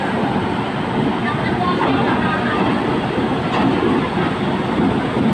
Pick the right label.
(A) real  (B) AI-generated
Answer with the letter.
A